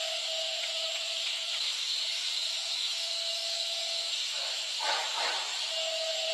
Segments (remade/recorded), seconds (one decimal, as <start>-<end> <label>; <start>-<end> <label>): 0.0-6.3 remade